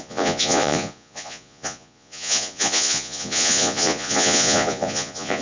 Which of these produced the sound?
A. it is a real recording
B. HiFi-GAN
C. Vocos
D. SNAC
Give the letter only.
C